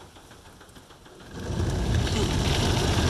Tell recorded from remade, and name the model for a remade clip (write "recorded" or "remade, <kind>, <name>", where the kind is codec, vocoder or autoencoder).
recorded